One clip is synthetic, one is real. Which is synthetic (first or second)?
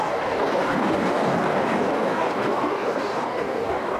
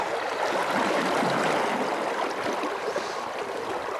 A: first